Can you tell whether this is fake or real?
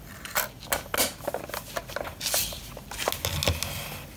real